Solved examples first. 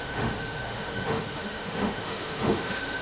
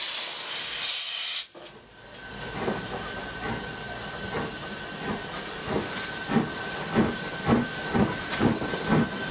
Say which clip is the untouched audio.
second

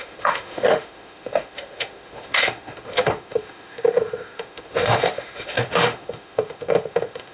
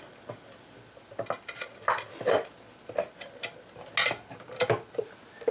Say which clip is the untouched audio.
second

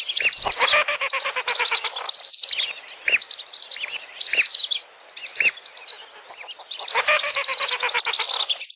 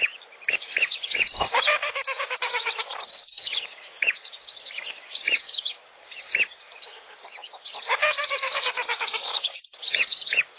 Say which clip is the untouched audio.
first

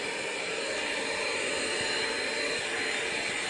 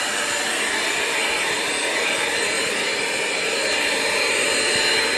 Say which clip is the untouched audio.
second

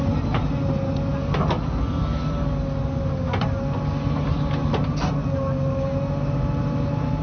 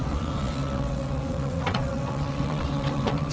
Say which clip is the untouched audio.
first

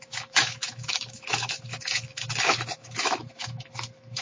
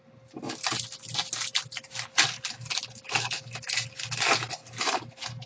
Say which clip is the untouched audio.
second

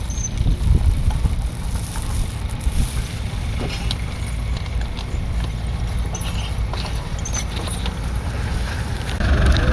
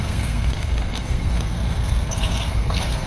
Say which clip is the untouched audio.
first